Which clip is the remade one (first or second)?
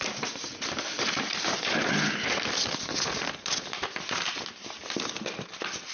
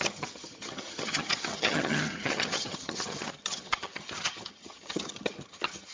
second